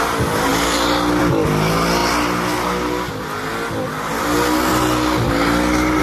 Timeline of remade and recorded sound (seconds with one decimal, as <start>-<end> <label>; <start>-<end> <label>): 0.0-6.0 recorded